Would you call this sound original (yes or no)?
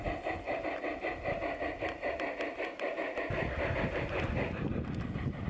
yes